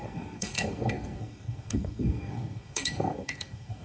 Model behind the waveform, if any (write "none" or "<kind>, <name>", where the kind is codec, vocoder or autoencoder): codec, SNAC